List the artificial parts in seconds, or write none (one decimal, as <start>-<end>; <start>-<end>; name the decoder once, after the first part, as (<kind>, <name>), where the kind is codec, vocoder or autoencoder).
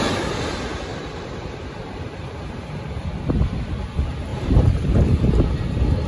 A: 0.9-3.1 (vocoder, BigVGAN v2); 4.3-5.0